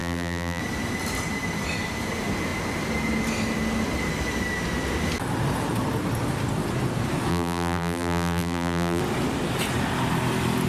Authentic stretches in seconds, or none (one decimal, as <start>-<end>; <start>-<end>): 0.6-7.3; 9.0-10.7